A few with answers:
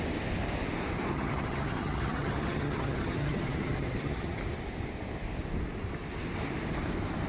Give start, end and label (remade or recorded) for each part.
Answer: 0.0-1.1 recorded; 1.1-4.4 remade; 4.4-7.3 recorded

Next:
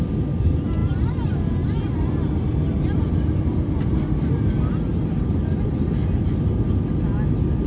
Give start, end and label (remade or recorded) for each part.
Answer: 0.0-7.7 recorded

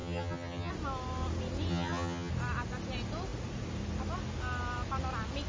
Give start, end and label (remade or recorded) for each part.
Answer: 0.0-0.7 remade; 0.7-1.7 recorded; 1.7-2.3 remade; 2.3-5.5 recorded

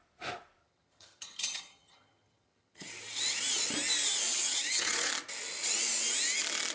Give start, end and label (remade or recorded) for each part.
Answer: 0.0-0.6 recorded; 0.6-2.9 remade; 2.9-4.3 recorded; 4.3-5.1 remade; 5.1-6.7 recorded

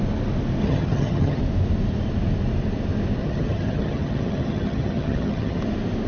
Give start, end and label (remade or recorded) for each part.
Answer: 0.0-0.6 recorded; 0.6-1.4 remade; 1.4-3.2 recorded; 3.2-5.6 remade; 5.6-6.1 recorded

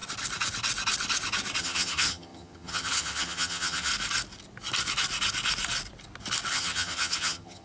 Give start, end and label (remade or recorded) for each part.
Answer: 0.0-1.6 recorded; 1.6-3.9 remade; 3.9-6.5 recorded; 6.5-7.6 remade

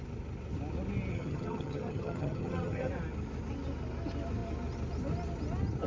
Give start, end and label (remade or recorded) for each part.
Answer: 0.0-1.1 recorded; 1.1-2.9 remade; 2.9-5.9 recorded